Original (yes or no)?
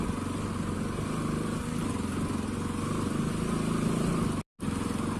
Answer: yes